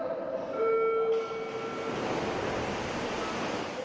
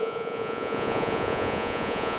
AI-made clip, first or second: second